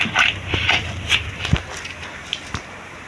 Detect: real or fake fake